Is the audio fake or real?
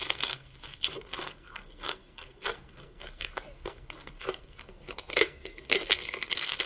fake